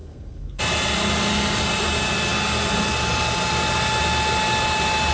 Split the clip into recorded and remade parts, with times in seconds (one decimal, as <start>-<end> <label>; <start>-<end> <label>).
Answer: 0.0-0.6 remade; 0.6-5.1 recorded